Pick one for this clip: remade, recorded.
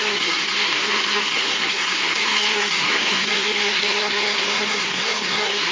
remade